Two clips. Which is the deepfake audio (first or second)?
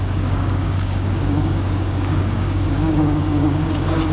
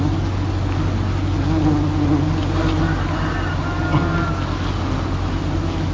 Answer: first